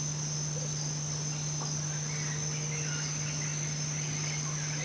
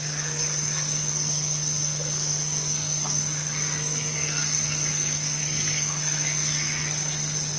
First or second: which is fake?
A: second